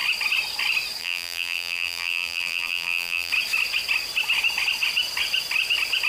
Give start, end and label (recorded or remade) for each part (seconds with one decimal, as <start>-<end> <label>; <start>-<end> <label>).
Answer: 0.0-1.0 recorded; 1.0-3.3 remade; 3.3-6.1 recorded